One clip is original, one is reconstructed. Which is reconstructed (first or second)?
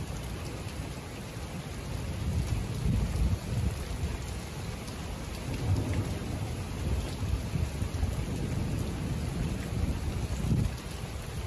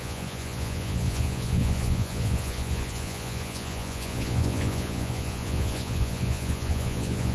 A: second